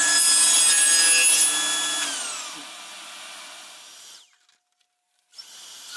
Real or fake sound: real